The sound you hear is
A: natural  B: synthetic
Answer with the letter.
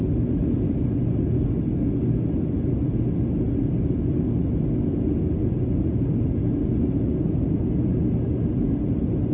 A